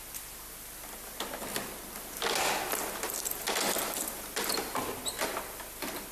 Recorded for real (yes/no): yes